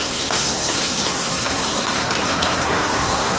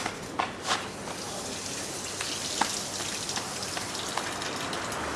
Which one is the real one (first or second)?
second